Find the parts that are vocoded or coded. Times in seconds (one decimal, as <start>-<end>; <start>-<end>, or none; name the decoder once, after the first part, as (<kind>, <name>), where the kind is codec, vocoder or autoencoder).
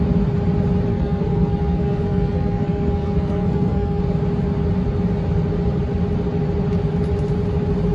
0.9-4.0 (codec, SNAC)